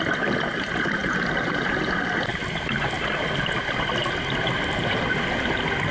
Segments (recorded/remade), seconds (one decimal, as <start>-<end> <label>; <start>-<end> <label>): 0.0-1.0 recorded; 1.0-1.7 remade; 1.7-4.0 recorded; 4.0-5.0 remade; 5.0-5.9 recorded